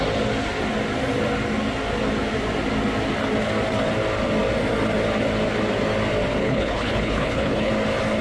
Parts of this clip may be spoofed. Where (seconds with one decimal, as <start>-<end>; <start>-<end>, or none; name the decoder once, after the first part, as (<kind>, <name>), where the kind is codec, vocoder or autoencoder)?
6.4-7.7 (codec, HILCodec)